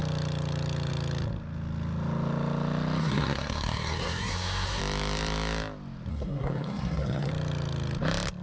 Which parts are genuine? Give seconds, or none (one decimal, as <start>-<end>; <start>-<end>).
0.0-3.0; 4.8-6.1; 7.3-8.4